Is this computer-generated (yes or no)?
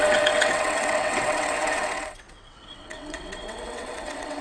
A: yes